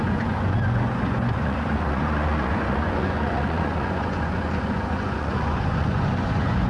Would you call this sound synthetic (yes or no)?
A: yes